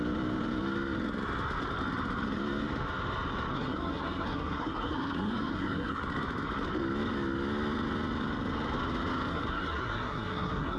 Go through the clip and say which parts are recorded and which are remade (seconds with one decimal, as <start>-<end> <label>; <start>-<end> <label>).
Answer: 0.0-3.5 recorded; 3.5-6.0 remade; 6.0-9.3 recorded; 9.3-10.8 remade

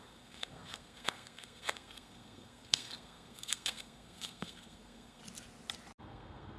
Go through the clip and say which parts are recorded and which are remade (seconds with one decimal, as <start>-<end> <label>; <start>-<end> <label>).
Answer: 0.0-5.2 remade; 5.2-6.0 recorded; 6.0-6.6 remade

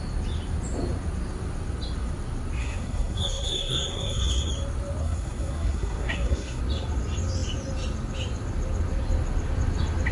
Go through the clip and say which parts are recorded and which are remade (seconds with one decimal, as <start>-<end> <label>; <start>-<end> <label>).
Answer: 0.0-2.6 recorded; 2.6-4.5 remade; 4.5-5.0 recorded; 5.0-6.6 remade; 6.6-10.1 recorded

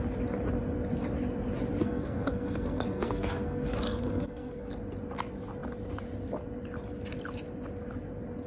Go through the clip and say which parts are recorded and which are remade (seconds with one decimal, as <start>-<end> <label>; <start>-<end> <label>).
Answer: 0.0-1.8 recorded; 1.8-4.7 remade; 4.7-8.5 recorded

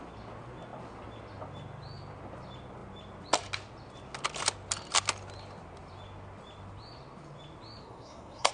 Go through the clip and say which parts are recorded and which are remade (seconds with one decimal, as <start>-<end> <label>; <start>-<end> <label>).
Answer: 0.0-7.8 recorded; 7.8-8.5 remade

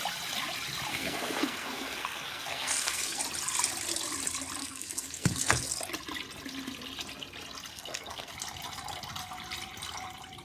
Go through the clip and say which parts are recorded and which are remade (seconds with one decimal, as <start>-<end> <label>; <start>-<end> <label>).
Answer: 0.0-0.9 recorded; 0.9-3.2 remade; 3.2-4.6 recorded; 4.6-5.7 remade; 5.7-7.7 recorded; 7.7-8.3 remade; 8.3-10.4 recorded